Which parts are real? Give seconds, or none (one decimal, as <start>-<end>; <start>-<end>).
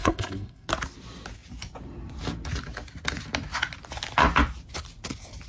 0.7-5.5